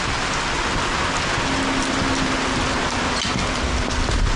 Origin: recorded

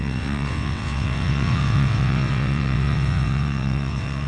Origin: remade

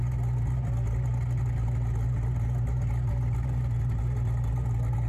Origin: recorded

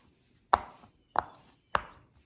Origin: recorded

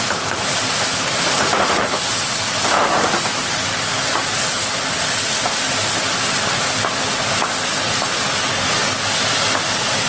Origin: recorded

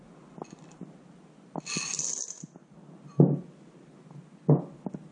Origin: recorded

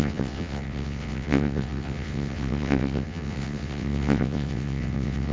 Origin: remade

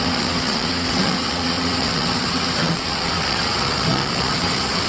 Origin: remade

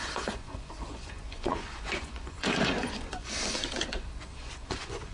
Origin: remade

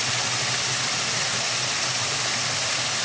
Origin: recorded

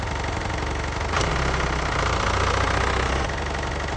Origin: recorded